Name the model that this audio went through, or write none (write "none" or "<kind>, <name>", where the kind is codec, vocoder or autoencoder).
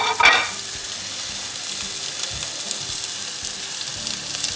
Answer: none